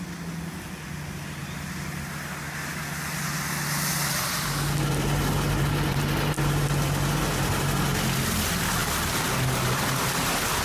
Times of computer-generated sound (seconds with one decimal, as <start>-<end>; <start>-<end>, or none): 8.8-9.3

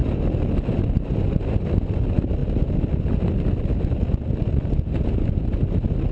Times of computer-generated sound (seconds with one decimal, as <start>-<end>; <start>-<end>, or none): none

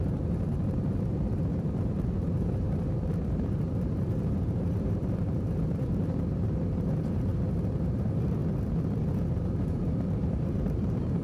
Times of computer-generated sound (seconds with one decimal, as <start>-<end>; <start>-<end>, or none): 0.0-7.3; 7.8-8.4; 9.3-11.2

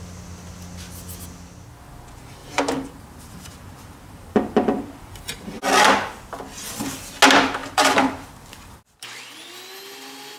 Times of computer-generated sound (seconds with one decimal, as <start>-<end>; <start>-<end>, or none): 2.4-5.2; 7.6-9.4

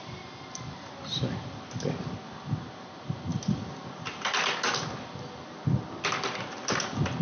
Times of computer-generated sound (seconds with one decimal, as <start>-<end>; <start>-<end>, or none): none